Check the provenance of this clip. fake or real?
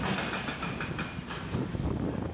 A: real